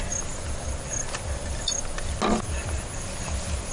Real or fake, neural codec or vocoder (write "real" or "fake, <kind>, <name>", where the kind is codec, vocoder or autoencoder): real